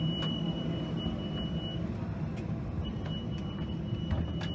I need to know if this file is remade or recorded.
recorded